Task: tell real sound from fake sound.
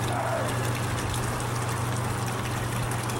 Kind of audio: real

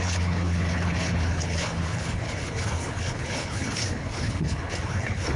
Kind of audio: fake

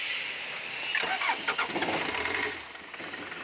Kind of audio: real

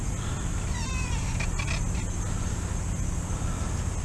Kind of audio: real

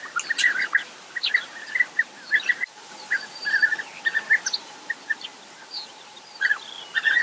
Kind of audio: real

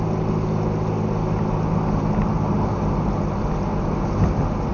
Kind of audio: real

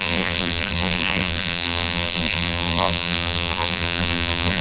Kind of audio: fake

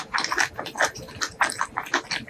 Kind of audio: real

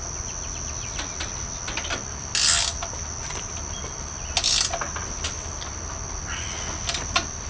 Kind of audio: real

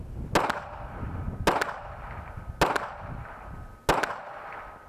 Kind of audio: real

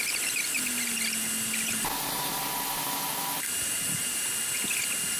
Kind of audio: real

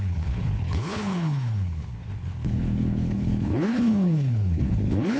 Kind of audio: fake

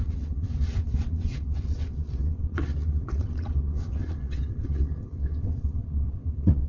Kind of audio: fake